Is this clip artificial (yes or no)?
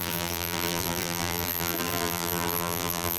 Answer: yes